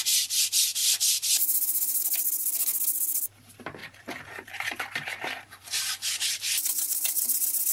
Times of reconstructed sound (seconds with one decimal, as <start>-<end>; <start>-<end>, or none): 0.8-2.0; 3.8-7.7